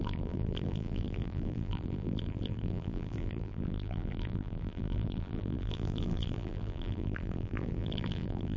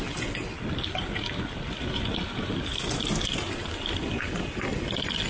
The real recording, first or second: second